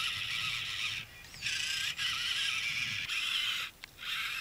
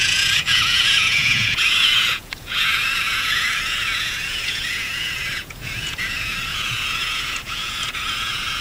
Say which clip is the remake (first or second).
second